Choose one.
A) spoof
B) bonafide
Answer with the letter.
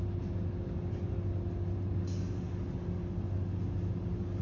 B